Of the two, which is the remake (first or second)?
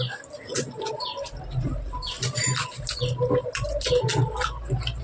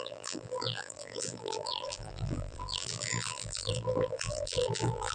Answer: second